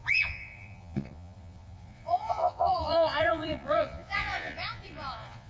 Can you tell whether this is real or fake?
fake